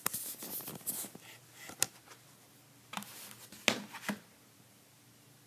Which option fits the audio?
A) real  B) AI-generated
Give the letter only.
A